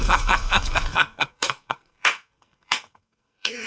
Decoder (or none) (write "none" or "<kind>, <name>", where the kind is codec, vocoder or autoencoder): codec, SNAC